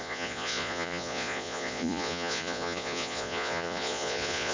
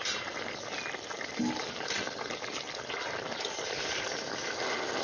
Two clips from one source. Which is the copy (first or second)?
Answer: first